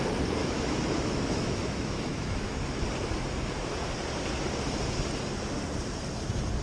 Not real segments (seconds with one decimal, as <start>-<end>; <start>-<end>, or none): 0.4-2.8